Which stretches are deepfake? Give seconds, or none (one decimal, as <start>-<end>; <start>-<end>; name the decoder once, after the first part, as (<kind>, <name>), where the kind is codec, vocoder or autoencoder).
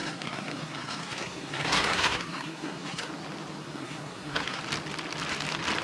0.0-3.1 (codec, SNAC); 3.6-4.6